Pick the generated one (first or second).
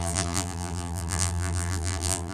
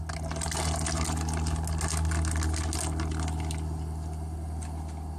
first